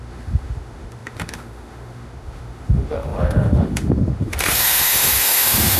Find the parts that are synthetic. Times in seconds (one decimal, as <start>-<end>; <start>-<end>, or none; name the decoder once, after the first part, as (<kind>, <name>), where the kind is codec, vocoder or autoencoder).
0.0-5.8 (autoencoder, DAC-VAE)